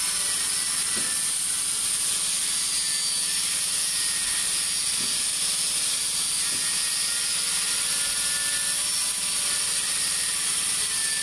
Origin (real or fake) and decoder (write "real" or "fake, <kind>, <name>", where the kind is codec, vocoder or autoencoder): real